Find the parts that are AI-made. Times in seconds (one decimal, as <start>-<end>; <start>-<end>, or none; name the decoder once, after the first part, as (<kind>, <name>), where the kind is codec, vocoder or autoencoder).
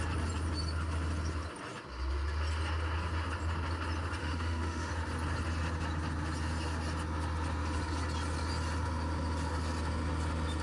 4.2-4.9 (autoencoder, DAC-VAE)